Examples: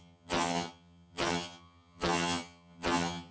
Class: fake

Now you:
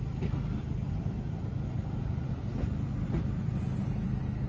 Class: real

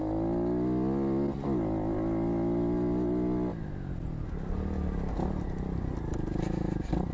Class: real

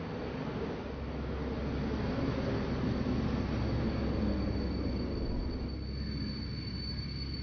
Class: real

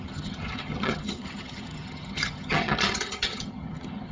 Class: fake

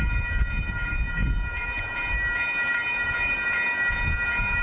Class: real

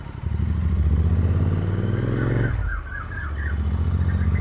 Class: real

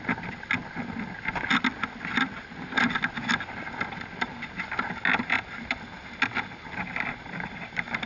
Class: real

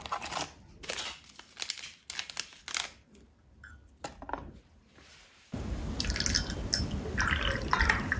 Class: real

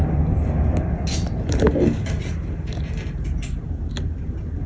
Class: real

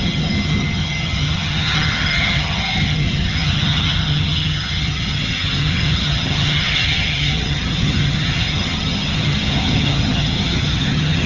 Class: fake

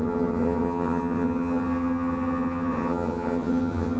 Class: fake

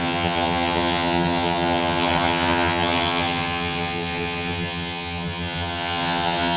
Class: fake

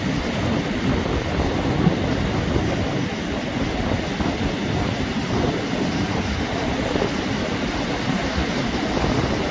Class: real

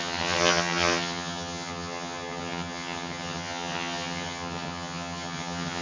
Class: fake